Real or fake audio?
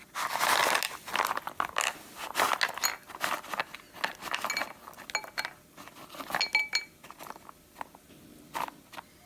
real